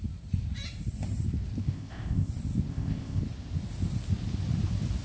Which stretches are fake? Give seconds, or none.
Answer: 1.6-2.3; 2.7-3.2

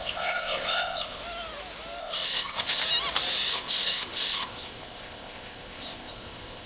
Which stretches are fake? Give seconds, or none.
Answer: 0.0-1.2; 2.0-2.8; 3.5-6.7

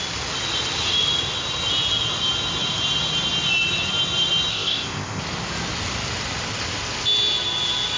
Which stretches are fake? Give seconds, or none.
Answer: 4.5-5.2

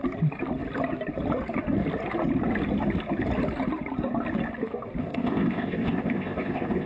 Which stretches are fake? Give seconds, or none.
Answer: 5.0-6.9

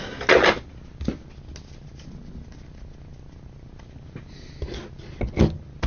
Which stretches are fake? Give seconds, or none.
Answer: none